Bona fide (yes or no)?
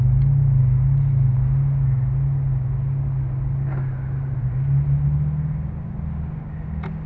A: yes